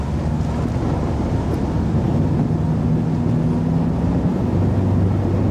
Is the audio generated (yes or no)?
no